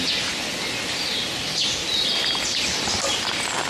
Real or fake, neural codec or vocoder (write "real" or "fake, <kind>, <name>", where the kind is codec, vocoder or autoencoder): real